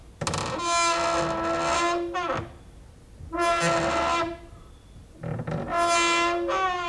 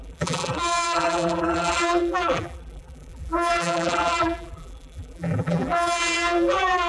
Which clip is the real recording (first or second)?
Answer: first